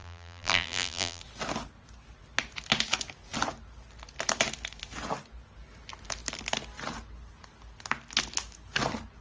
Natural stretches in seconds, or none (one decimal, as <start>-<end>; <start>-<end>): 1.2-9.2